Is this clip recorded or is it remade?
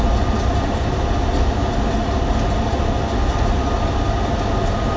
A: recorded